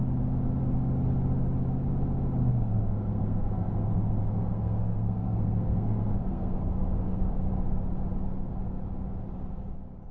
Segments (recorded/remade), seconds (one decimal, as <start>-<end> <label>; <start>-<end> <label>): 0.0-2.5 recorded; 2.5-7.5 remade; 7.5-10.1 recorded